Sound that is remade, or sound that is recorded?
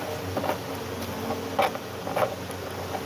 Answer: recorded